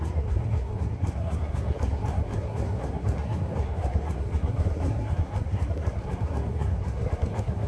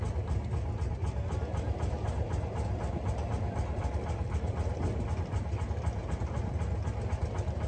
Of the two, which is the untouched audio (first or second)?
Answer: second